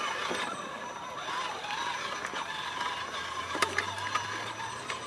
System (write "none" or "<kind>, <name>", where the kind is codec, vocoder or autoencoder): none